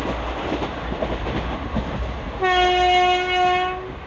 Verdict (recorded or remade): recorded